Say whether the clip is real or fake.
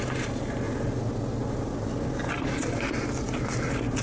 real